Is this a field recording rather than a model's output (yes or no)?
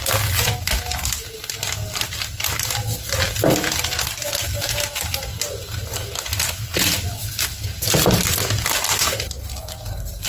yes